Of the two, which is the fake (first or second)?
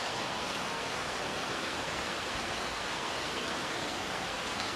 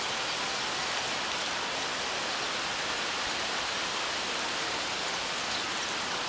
first